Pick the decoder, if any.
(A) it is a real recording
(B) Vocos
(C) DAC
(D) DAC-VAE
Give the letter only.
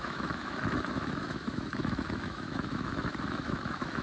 D